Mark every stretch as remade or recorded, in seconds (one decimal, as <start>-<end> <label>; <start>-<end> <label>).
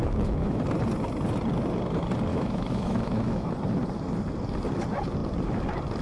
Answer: 0.0-0.6 remade; 0.6-2.3 recorded; 2.3-3.5 remade; 3.5-6.0 recorded